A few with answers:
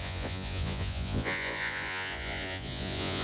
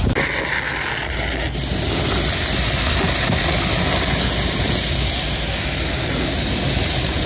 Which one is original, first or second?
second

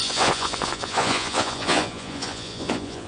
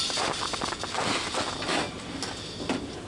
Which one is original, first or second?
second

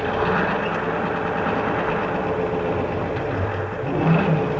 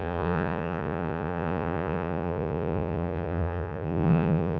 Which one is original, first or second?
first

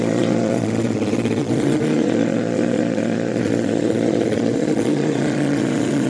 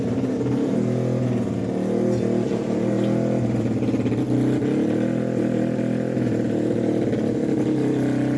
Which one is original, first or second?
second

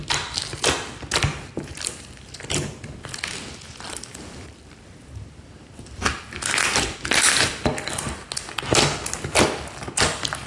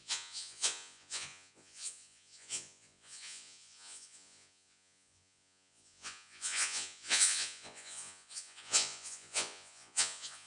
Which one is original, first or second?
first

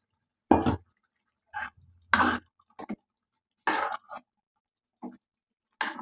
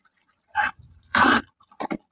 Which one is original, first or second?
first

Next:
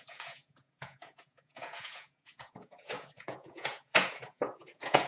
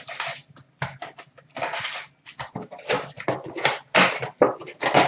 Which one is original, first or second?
second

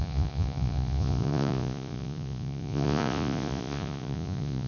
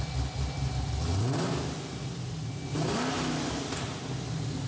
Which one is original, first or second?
second